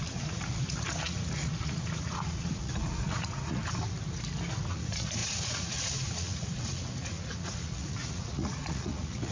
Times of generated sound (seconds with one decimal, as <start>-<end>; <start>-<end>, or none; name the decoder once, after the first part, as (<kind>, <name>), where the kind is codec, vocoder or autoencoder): 0.0-3.6 (vocoder, Vocos); 4.7-9.3

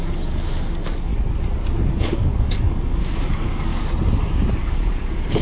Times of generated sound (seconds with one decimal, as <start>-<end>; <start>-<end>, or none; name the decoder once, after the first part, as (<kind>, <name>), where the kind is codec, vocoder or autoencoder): 0.0-1.1 (codec, DAC); 2.0-3.7; 4.6-5.4

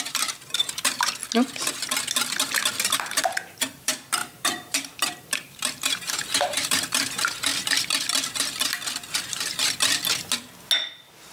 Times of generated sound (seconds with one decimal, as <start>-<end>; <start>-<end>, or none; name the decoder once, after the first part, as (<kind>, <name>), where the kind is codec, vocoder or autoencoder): 0.0-1.2 (vocoder, BigVGAN v2); 3.0-7.5; 10.9-11.3